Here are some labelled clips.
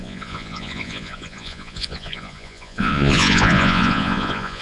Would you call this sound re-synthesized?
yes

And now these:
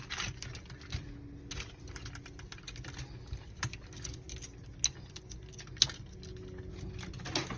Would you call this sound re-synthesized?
no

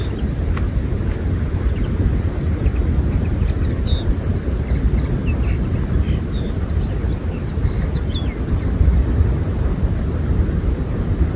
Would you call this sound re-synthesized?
no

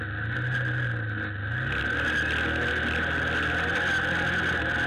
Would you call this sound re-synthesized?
no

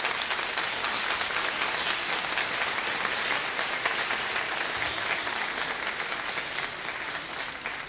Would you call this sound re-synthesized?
no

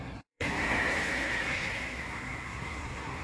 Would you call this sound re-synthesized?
yes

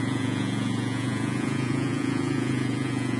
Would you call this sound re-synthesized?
yes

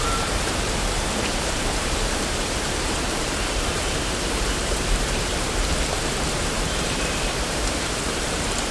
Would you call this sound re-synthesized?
yes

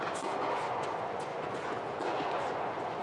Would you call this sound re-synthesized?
yes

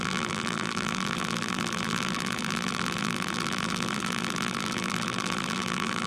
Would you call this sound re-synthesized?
yes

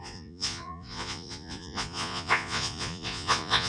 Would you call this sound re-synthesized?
yes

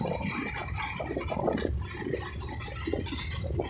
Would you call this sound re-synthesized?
no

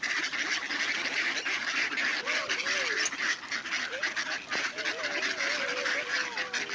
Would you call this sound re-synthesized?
no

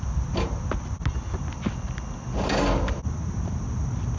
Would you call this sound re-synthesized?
no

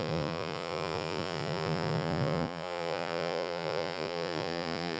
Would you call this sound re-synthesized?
yes